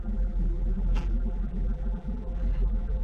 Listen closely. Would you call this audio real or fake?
fake